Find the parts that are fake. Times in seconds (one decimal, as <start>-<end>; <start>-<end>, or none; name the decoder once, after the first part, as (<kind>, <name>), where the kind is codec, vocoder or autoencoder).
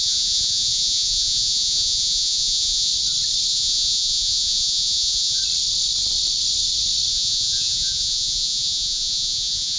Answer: 0.0-2.9 (vocoder, Vocos); 3.5-5.4; 7.1-9.8